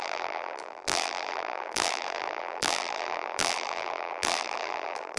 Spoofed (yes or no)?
yes